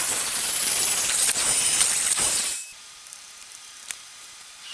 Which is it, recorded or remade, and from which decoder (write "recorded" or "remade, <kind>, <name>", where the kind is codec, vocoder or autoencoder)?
remade, vocoder, BigVGAN v2